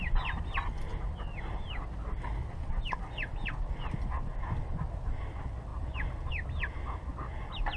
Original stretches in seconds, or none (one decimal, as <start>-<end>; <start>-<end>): 0.0-7.8